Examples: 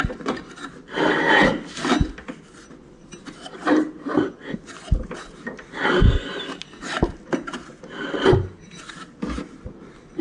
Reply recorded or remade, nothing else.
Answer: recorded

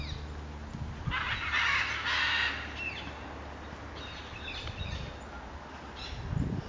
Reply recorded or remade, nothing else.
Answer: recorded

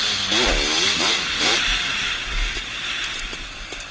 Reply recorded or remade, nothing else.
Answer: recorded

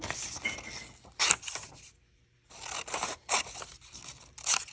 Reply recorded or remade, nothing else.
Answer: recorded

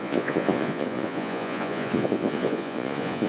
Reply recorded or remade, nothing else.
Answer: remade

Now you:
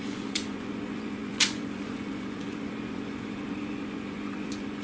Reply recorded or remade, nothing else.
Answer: remade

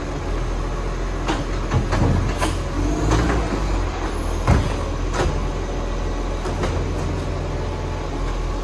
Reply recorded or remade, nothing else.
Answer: recorded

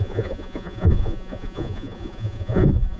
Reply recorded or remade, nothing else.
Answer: remade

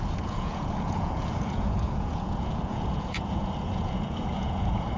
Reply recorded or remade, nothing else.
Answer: remade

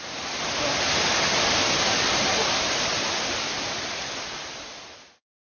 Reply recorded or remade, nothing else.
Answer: recorded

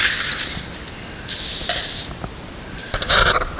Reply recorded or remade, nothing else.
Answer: recorded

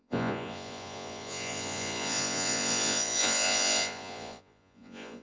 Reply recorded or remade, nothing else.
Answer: remade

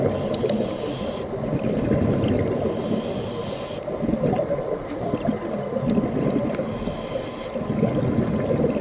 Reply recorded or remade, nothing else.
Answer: recorded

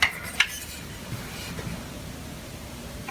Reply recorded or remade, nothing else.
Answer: recorded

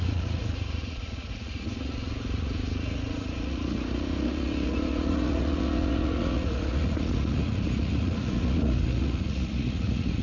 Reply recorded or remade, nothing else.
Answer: remade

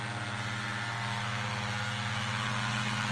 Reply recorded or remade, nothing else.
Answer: recorded